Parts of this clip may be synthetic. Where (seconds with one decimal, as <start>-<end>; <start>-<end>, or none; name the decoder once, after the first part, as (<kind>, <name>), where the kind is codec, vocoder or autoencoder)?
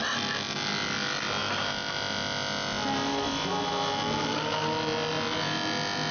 none